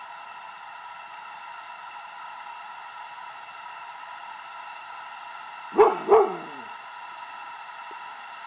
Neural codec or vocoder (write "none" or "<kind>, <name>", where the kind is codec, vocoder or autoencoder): none